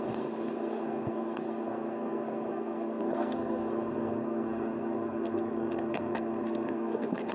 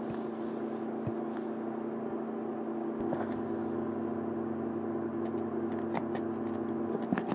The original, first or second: second